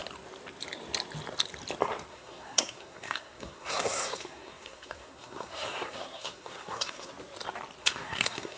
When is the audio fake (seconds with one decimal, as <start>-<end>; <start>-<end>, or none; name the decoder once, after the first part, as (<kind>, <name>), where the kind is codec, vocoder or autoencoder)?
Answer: 2.1-7.1 (codec, SNAC); 7.8-8.6